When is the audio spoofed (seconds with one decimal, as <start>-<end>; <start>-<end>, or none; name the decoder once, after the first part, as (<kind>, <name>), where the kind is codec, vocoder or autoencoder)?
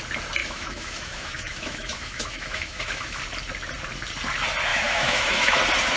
0.4-3.2 (autoencoder, DAC-VAE); 4.7-5.6